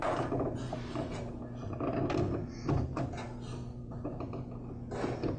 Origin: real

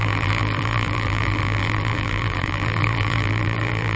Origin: fake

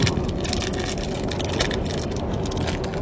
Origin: real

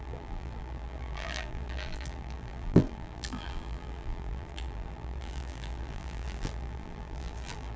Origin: fake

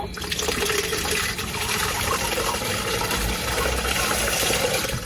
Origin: fake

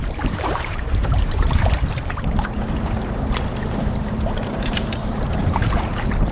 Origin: fake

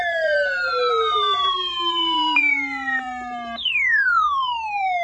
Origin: fake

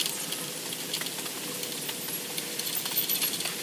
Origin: real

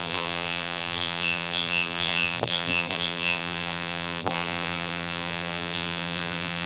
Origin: fake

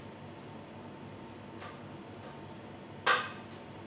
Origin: real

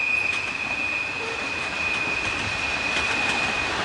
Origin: real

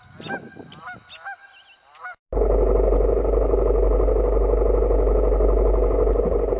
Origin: real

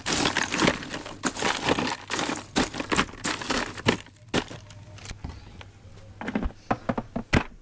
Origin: real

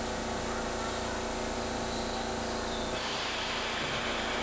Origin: real